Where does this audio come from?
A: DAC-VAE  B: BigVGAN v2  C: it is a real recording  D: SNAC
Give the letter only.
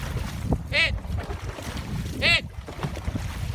C